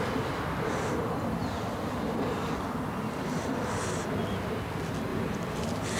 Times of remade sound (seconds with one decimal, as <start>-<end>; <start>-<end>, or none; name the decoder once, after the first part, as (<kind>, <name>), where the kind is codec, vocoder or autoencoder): 5.1-6.0 (vocoder, BigVGAN v2)